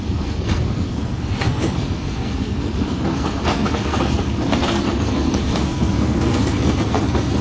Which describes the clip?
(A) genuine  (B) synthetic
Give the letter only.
B